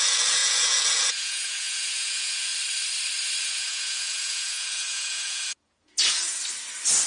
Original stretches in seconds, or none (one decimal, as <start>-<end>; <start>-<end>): 2.5-3.4; 6.4-7.1